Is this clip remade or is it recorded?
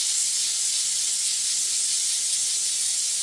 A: recorded